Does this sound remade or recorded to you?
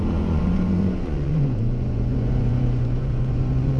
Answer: remade